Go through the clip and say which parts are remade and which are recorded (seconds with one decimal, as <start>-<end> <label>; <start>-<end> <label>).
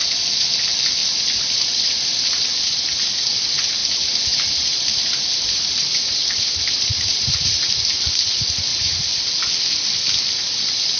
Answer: 0.0-1.0 recorded; 1.0-3.0 remade; 3.0-3.8 recorded; 3.8-7.7 remade; 7.7-8.7 recorded; 8.7-9.5 remade; 9.5-11.0 recorded